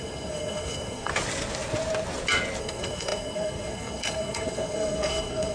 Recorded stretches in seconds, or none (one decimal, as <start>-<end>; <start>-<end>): 1.1-2.6